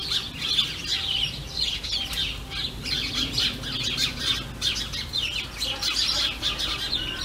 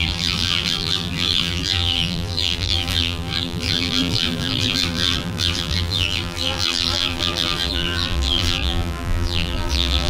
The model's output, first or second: second